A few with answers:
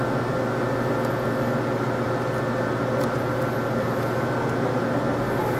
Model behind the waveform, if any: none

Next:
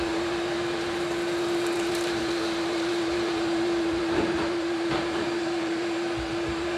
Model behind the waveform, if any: vocoder, BigVGAN v2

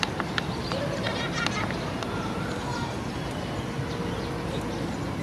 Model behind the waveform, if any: none